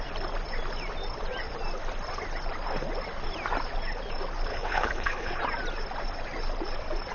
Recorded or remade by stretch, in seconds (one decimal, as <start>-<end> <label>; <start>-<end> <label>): 0.0-4.5 recorded; 4.5-5.4 remade; 5.4-7.1 recorded